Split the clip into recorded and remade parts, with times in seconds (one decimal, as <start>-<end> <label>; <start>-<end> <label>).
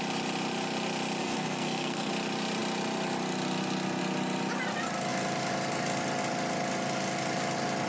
0.0-1.2 recorded; 1.2-2.1 remade; 2.1-7.9 recorded